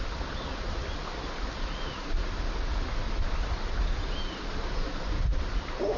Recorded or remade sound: recorded